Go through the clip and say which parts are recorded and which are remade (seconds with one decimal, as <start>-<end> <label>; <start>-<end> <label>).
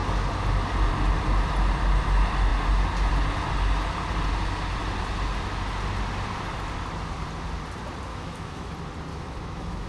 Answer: 0.0-8.1 recorded; 8.1-8.7 remade; 8.7-9.1 recorded; 9.1-9.9 remade